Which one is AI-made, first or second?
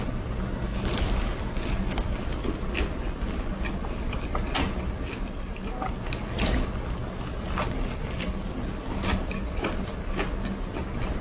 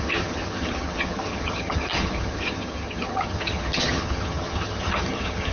second